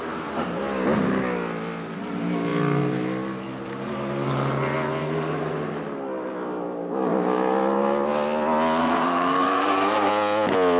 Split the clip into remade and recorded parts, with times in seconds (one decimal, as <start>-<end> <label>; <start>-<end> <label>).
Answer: 0.0-8.8 recorded; 8.8-10.1 remade; 10.1-10.8 recorded